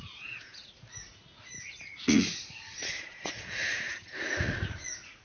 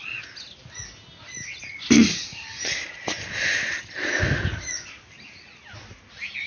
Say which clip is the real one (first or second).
second